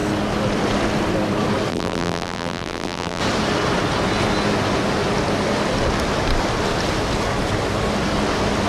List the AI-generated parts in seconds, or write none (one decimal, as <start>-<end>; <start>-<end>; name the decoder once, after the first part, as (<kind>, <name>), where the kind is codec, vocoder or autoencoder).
1.7-3.2 (vocoder, BigVGAN v2)